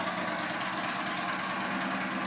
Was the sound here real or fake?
real